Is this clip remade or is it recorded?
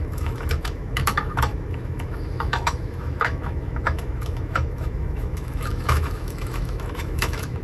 remade